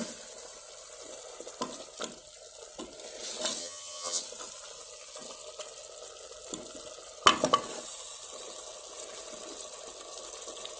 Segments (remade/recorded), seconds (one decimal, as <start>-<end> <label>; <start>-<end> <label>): 0.0-3.6 recorded; 3.6-4.2 remade; 4.2-10.8 recorded